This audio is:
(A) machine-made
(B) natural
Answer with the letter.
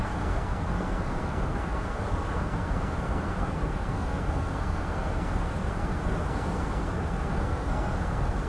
A